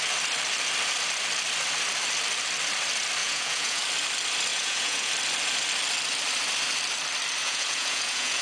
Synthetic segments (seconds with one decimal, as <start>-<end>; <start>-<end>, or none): 3.2-3.8; 4.5-5.1; 7.4-8.4